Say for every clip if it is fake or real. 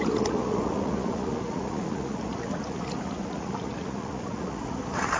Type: fake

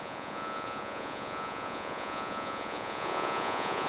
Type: fake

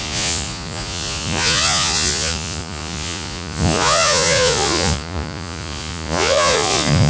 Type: fake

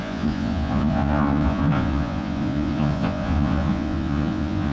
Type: fake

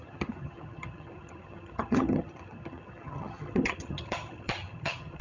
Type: fake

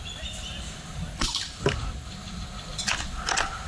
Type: real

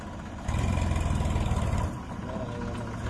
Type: real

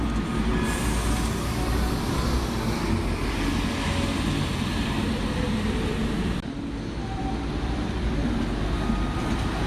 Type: real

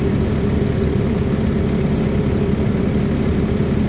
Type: real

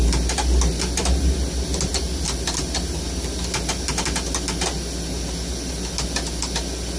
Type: real